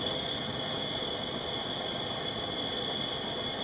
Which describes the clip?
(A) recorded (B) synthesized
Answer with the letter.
A